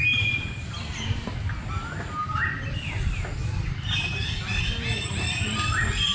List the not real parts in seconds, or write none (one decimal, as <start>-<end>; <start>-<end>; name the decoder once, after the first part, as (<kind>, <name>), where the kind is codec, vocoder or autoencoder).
none